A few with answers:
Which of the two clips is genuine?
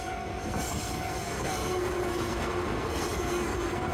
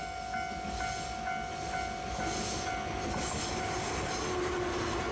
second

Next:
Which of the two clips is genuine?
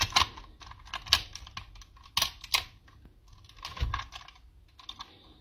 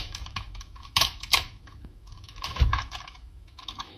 first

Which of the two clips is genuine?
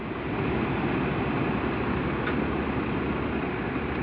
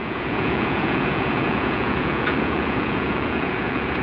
first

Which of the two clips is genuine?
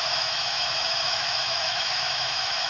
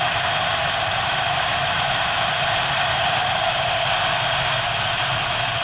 second